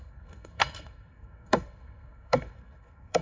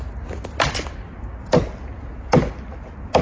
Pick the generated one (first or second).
first